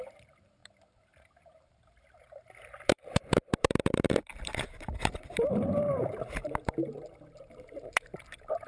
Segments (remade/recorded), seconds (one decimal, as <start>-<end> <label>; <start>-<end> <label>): 0.0-8.7 remade